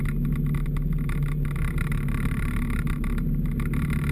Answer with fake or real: real